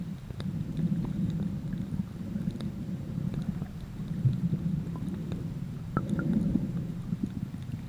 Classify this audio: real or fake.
fake